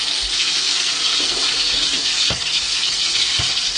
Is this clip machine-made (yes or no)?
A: yes